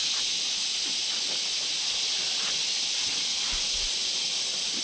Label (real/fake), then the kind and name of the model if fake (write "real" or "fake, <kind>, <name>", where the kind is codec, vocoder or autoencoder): real